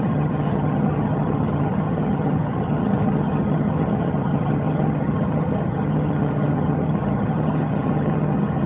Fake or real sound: fake